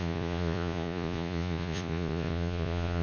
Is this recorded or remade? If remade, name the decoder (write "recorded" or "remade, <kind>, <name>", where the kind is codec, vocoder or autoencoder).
remade, vocoder, Vocos